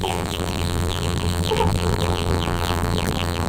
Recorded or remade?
remade